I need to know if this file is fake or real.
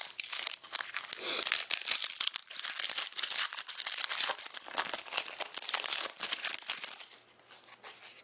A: real